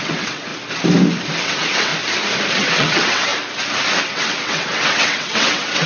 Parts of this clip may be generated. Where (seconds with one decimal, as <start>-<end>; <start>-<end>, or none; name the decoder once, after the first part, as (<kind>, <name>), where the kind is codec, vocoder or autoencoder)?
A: 0.0-0.5 (vocoder, WaveNeXt); 1.4-1.9; 2.5-3.3; 4.0-5.9